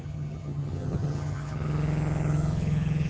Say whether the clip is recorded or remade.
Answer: remade